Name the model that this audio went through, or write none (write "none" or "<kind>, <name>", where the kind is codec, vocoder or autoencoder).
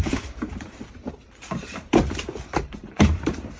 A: vocoder, BigVGAN v2